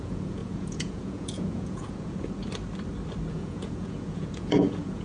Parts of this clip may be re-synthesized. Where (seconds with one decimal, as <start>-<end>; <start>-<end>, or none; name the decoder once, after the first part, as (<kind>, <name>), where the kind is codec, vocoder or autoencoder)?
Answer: 0.0-2.4 (vocoder, Vocos); 3.3-5.0